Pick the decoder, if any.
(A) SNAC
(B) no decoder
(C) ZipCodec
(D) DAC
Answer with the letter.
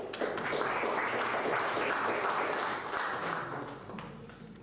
B